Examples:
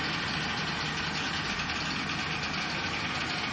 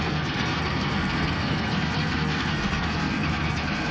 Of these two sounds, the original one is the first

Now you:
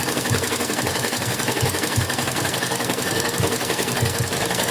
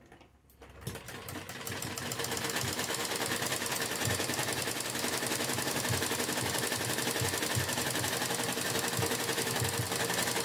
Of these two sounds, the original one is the second